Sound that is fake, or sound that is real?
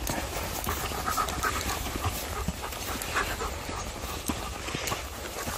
real